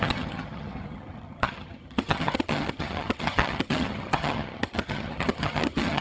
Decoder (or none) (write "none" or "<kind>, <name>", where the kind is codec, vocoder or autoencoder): vocoder, HiFi-GAN